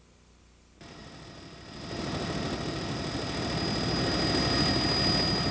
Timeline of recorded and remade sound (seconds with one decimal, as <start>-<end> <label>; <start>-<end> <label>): 0.0-5.5 recorded